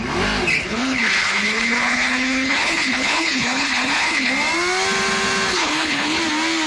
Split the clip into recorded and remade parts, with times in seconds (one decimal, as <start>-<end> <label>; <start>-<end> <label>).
0.0-0.6 recorded; 0.6-4.3 remade; 4.3-5.5 recorded; 5.5-6.2 remade; 6.2-6.7 recorded